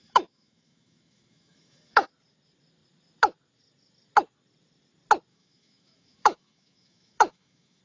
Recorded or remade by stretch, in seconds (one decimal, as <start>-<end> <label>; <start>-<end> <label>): 0.0-2.1 remade; 2.1-5.3 recorded; 5.3-7.8 remade